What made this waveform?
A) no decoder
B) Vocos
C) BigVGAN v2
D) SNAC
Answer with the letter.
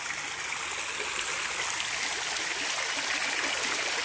A